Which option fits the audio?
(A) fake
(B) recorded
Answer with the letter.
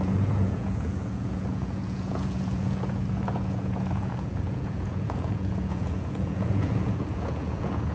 A